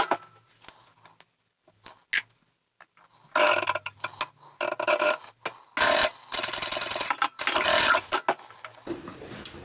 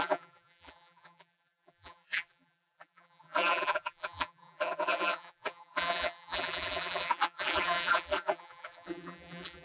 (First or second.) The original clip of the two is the first